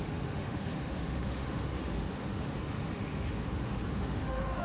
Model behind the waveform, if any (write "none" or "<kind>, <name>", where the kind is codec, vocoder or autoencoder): autoencoder, DAC-VAE